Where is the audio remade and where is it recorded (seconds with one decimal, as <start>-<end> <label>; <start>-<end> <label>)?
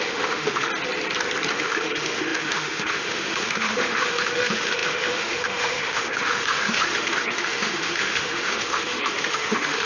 0.0-0.7 remade; 0.7-1.5 recorded; 1.5-9.9 remade